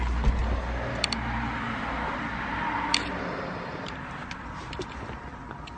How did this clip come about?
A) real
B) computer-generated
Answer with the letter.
A